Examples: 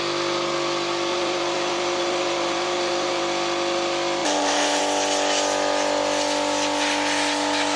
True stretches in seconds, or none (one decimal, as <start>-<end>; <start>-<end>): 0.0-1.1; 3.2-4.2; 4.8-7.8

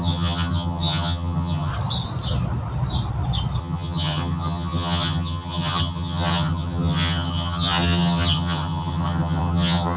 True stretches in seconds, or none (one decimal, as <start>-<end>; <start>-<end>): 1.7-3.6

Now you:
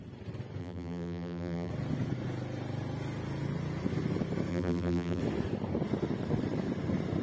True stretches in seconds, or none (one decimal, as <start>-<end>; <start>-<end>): 0.0-0.6; 1.7-4.5; 5.2-7.2